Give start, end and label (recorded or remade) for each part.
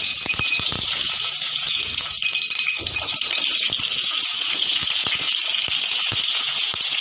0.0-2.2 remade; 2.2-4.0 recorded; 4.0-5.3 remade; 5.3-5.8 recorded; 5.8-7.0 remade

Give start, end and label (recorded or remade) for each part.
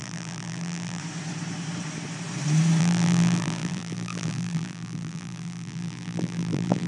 0.0-1.0 remade; 1.0-2.8 recorded; 2.8-6.9 remade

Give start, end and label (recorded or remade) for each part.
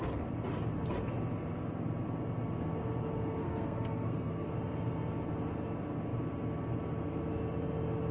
0.0-3.4 recorded; 3.4-4.5 remade; 4.5-8.1 recorded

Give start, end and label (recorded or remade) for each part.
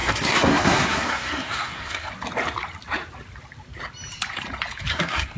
0.0-2.1 remade; 2.1-4.9 recorded; 4.9-5.4 remade